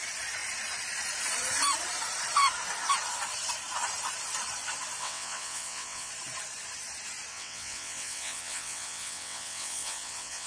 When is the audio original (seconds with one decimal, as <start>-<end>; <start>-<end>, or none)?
0.0-5.0; 6.1-7.3